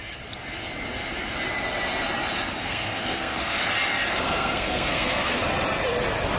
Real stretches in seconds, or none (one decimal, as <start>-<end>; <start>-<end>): 0.0-2.6; 3.6-4.1; 5.4-6.4